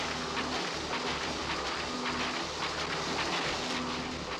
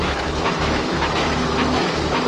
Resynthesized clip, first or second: second